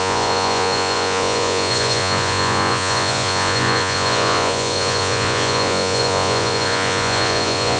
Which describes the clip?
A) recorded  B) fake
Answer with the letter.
B